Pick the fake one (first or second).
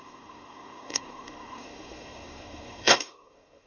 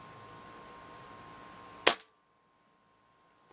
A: first